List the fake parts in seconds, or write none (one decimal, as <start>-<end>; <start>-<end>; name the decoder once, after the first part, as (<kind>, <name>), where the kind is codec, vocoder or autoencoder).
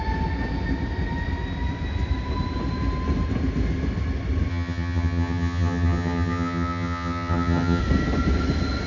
4.5-7.8 (vocoder, HiFi-GAN)